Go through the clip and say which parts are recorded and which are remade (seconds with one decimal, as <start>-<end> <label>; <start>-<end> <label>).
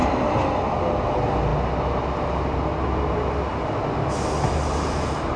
0.0-5.4 recorded